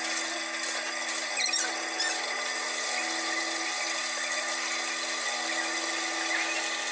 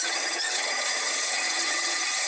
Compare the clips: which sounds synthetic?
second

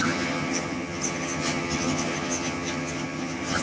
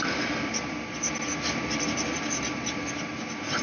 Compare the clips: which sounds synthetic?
first